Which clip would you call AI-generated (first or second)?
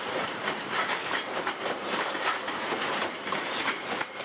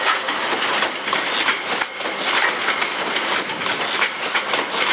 first